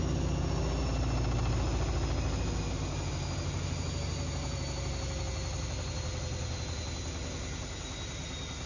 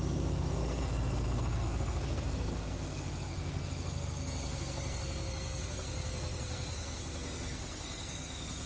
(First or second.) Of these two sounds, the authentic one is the first